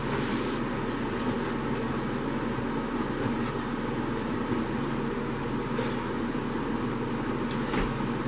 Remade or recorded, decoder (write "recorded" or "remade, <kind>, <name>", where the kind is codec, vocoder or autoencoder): recorded